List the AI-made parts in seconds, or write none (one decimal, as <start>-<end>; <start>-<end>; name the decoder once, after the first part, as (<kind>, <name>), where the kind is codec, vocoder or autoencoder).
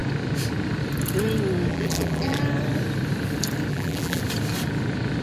1.7-2.4 (vocoder, BigVGAN v2); 3.7-4.2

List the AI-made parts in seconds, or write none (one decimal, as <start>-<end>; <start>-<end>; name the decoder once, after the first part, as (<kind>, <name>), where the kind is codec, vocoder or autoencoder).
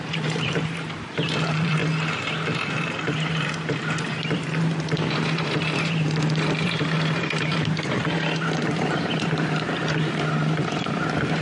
0.0-1.8 (vocoder, BigVGAN v2); 2.5-11.4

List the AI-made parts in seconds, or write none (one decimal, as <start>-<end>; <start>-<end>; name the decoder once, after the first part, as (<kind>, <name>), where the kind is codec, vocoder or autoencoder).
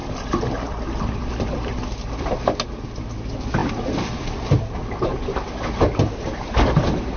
0.0-1.8 (vocoder, BigVGAN v2)